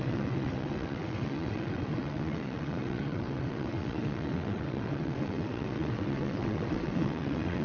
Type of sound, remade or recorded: remade